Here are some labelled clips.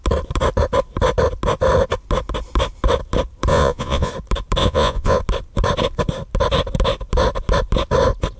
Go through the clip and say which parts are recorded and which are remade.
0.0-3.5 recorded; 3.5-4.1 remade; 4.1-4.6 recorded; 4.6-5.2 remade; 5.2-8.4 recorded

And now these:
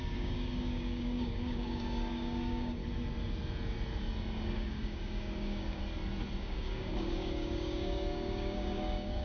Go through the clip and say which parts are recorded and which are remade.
0.0-2.8 remade; 2.8-4.5 recorded; 4.5-5.8 remade; 5.8-6.4 recorded; 6.4-9.2 remade